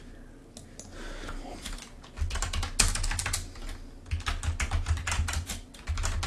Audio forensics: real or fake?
real